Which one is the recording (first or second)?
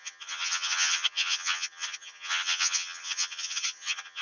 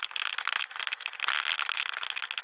second